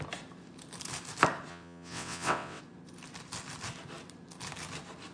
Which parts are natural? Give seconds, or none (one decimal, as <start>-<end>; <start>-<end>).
0.0-1.5; 2.6-5.1